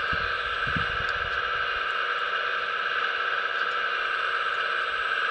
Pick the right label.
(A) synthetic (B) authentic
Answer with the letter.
B